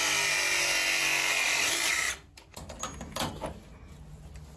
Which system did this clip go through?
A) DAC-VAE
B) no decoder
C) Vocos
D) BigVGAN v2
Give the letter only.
B